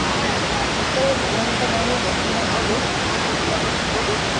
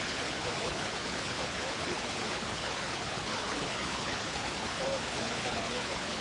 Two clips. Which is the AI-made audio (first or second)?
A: second